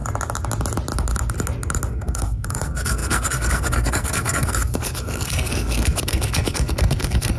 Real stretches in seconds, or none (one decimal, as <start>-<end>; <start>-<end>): 0.0-1.9